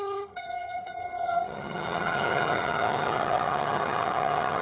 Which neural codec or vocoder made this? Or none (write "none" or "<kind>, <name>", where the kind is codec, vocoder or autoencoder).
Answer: vocoder, HiFi-GAN